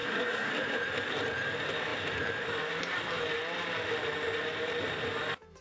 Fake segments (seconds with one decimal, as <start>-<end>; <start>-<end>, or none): 0.0-0.5